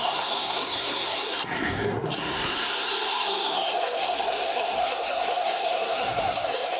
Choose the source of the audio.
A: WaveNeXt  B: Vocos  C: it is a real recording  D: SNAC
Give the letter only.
D